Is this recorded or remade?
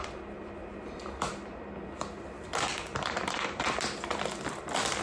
remade